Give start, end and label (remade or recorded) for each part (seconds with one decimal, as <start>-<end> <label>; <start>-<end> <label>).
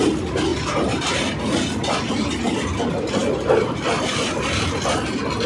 0.0-5.5 recorded